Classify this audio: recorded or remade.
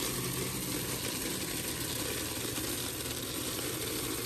recorded